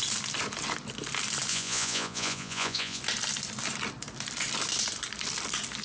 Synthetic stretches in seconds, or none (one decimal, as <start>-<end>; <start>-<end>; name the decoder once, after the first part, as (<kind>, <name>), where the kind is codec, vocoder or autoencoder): 1.5-3.0 (vocoder, Vocos)